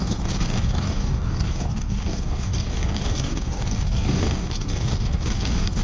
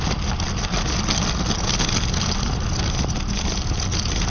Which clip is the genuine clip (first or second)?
second